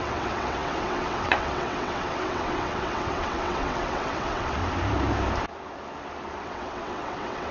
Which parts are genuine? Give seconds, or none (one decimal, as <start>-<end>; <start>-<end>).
4.6-6.4